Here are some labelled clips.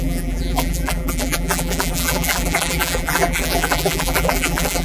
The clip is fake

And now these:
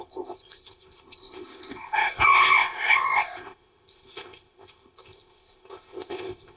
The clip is fake